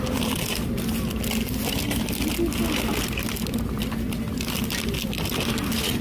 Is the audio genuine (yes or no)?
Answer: yes